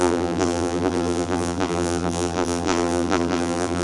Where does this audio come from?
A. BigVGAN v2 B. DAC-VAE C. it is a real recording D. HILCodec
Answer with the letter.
A